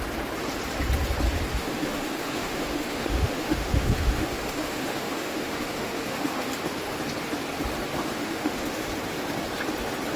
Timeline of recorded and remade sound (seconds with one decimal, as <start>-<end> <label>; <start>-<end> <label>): 0.0-1.6 recorded; 1.6-6.5 remade; 6.5-8.0 recorded; 8.0-8.9 remade; 8.9-10.2 recorded